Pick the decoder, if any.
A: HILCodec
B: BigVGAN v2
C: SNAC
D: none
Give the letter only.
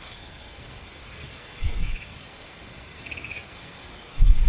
C